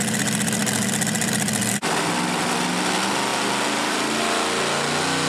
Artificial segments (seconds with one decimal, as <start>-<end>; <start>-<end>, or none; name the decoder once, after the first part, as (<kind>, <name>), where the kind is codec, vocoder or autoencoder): none